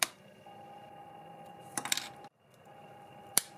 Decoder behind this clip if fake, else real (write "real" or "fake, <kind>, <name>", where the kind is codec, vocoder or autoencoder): fake, vocoder, BigVGAN v2